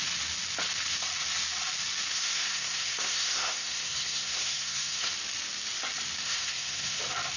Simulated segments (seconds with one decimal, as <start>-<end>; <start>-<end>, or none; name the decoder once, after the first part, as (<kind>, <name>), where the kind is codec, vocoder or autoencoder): 2.1-5.1 (codec, SNAC); 6.2-7.0